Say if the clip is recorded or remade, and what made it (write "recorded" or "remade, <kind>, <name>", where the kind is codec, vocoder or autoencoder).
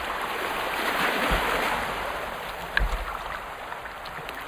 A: recorded